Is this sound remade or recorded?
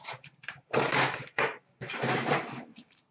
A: remade